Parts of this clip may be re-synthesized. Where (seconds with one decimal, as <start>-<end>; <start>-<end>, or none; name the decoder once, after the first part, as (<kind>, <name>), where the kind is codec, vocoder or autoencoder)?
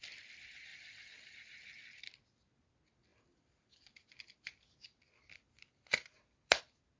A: 0.7-1.3 (vocoder, BigVGAN v2); 3.1-6.6